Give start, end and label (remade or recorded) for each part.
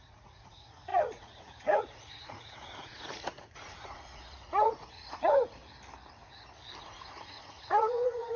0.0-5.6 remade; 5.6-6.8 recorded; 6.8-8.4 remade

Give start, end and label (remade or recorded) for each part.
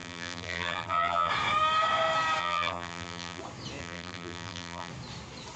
0.0-1.3 remade; 1.3-2.4 recorded; 2.4-3.4 remade; 3.4-3.8 recorded; 3.8-4.9 remade; 4.9-5.6 recorded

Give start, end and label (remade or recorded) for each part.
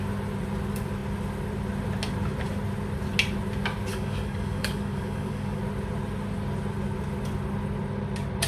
0.0-3.9 recorded; 3.9-5.6 remade; 5.6-8.5 recorded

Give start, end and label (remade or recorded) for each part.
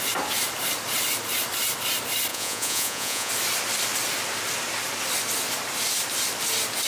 0.0-2.3 recorded; 2.3-3.3 remade; 3.3-6.9 recorded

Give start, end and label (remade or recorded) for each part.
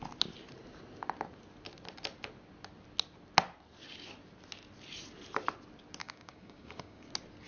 0.0-6.0 recorded; 6.0-7.1 remade; 7.1-7.5 recorded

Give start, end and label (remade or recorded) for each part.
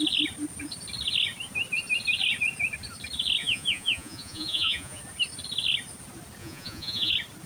0.0-3.4 recorded; 3.4-5.0 remade; 5.0-6.4 recorded; 6.4-7.1 remade; 7.1-7.5 recorded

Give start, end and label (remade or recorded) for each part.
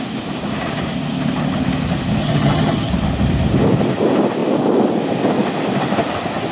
0.0-2.2 recorded; 2.2-2.9 remade; 2.9-6.5 recorded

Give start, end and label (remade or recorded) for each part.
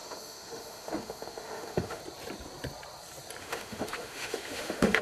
0.0-2.0 remade; 2.0-3.4 recorded; 3.4-5.0 remade